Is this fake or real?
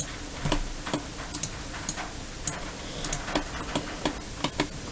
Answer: real